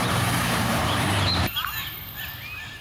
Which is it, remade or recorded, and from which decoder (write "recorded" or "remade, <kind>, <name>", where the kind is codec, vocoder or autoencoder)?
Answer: remade, vocoder, BigVGAN v2